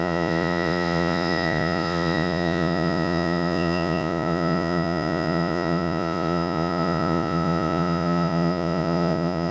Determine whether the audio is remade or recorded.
remade